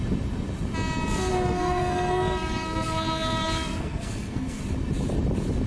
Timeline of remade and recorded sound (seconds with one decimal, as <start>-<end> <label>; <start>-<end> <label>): 0.0-1.3 recorded; 1.3-4.6 remade; 4.6-5.7 recorded